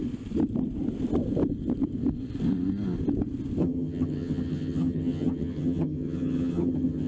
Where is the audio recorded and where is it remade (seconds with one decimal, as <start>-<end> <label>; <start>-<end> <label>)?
0.0-3.6 recorded; 3.6-7.1 remade